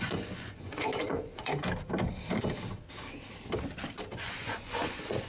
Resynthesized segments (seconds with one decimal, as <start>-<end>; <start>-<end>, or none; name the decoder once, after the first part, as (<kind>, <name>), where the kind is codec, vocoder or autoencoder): 0.0-1.5 (vocoder, Vocos); 4.2-5.3